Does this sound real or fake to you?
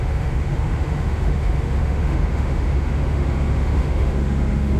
fake